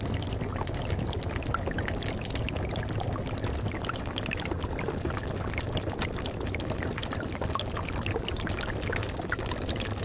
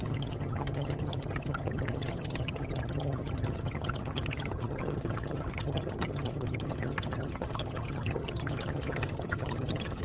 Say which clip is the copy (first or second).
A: second